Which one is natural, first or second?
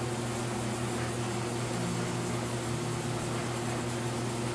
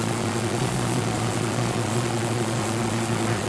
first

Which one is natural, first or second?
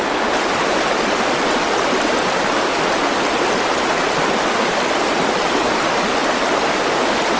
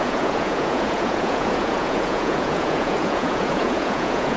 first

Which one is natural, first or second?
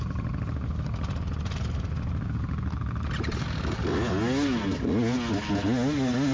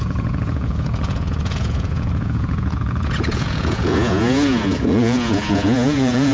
first